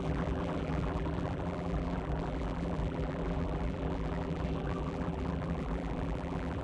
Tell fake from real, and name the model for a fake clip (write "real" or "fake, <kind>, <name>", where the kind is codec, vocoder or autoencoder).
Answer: fake, vocoder, BigVGAN v2